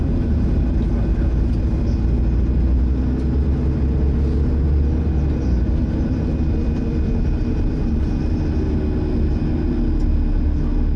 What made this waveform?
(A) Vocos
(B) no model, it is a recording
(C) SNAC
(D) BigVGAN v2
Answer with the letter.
B